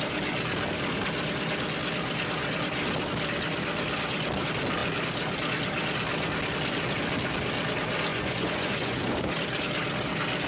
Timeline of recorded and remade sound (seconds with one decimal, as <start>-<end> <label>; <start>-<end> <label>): 0.0-8.1 recorded; 8.1-9.3 remade; 9.3-10.5 recorded